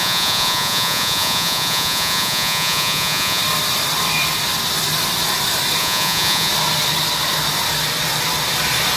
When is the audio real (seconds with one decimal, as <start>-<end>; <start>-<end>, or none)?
3.4-5.8; 6.5-9.0

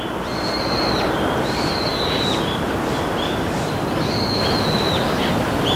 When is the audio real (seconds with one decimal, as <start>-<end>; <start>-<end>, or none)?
0.0-5.8

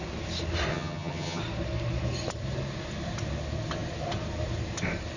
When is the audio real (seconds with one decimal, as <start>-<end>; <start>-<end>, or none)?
0.0-0.7; 1.4-5.2

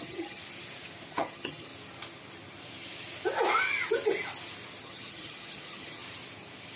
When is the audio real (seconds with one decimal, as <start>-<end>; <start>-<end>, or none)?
0.4-1.1; 1.7-4.8; 6.0-6.8

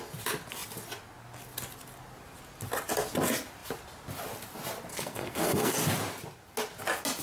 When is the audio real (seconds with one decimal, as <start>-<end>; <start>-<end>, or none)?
0.0-4.9; 5.7-7.2

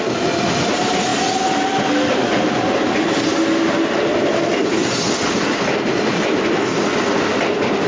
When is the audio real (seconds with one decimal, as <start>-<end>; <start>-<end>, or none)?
0.0-7.9